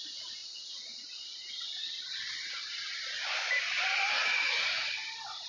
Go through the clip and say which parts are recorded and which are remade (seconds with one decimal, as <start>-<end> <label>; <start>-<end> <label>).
0.0-5.5 recorded